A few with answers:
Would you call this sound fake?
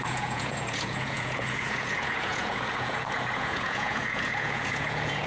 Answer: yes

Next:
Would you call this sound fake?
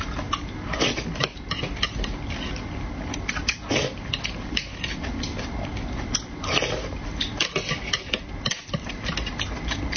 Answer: no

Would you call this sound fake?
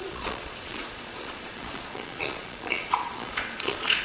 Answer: yes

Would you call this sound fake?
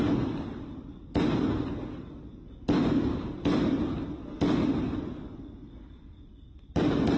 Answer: no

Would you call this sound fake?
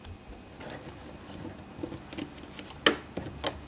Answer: no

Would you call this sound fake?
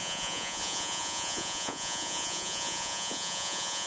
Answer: yes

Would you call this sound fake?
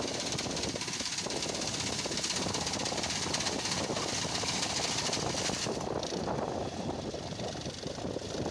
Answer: no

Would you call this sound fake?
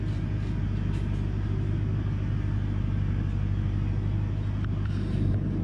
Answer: no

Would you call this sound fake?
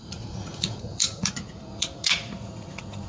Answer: yes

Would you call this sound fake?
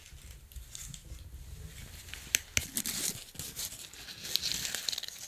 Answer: no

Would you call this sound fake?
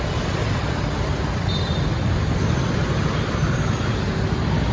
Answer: no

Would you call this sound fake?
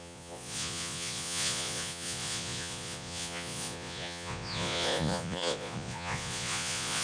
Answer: yes